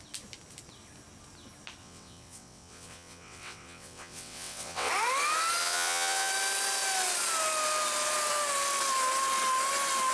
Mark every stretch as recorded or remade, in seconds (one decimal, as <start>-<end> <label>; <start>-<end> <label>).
0.0-1.8 recorded; 1.8-4.9 remade; 4.9-5.6 recorded; 5.6-6.3 remade; 6.3-10.1 recorded